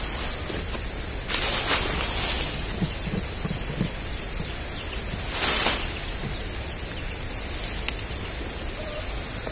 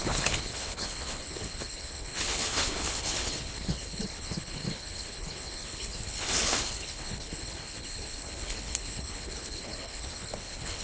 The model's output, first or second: second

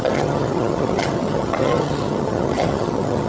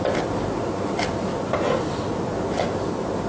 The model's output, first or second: first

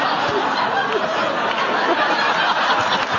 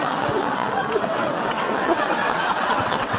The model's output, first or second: second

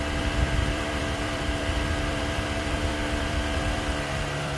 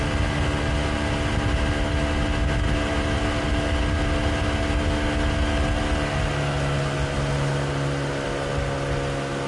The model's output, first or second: first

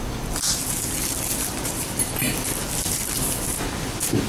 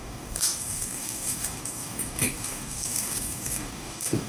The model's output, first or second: second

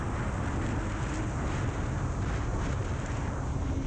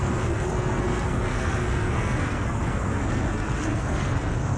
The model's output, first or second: second